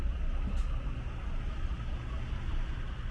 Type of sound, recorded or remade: recorded